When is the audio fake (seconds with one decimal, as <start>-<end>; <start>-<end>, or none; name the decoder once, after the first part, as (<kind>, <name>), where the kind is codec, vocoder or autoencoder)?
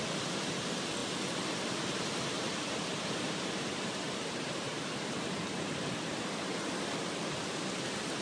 2.9-5.7 (vocoder, BigVGAN v2)